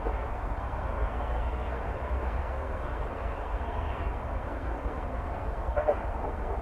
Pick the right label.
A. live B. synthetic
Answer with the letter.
B